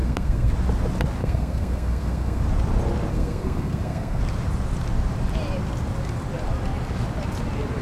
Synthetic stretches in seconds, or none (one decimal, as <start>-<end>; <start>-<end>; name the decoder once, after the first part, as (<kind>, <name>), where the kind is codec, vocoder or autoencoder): 0.0-0.5 (codec, SNAC); 1.2-2.4; 3.1-4.2